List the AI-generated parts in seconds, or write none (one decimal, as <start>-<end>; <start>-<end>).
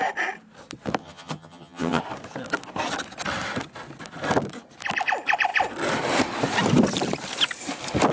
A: 1.0-2.0